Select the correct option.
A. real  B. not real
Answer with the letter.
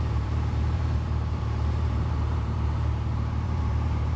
B